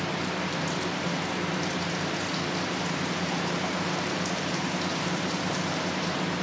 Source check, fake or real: fake